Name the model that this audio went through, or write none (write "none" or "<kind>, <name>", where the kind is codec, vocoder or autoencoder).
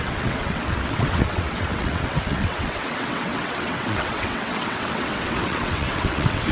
vocoder, WaveNeXt